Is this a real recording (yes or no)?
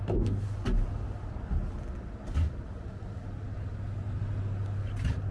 yes